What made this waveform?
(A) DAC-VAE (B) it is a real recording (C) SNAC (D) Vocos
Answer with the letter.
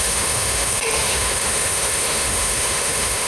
A